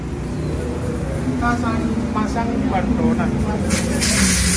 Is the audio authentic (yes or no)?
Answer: yes